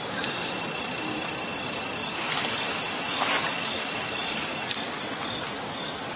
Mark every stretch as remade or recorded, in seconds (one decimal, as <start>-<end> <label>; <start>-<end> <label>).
0.0-1.5 remade; 1.5-2.1 recorded; 2.1-6.2 remade